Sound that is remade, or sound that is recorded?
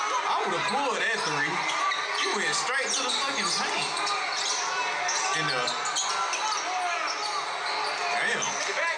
recorded